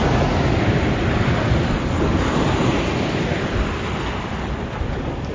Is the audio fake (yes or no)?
no